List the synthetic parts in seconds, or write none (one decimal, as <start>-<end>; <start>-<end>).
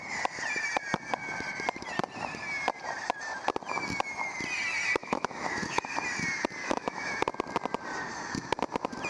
5.0-5.9; 6.6-7.2